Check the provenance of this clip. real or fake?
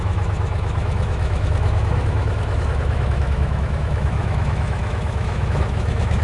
fake